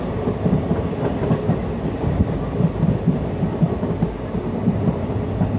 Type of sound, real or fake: real